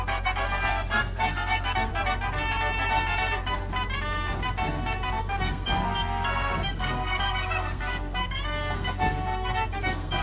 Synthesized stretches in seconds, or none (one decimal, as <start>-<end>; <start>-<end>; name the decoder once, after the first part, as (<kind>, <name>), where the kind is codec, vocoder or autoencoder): 0.0-1.9 (codec, SNAC); 5.2-10.2